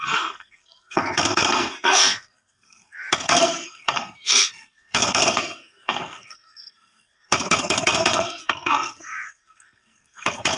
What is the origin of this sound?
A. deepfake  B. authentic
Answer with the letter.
A